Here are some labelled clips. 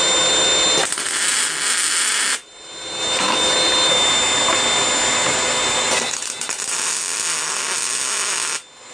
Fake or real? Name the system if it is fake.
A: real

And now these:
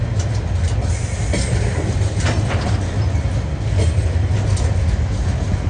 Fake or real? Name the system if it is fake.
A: real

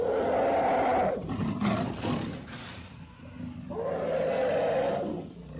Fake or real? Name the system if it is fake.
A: real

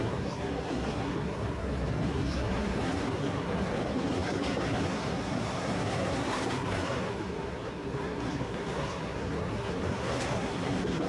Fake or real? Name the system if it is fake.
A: fake, codec, SNAC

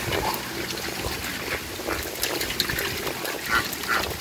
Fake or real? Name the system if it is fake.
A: real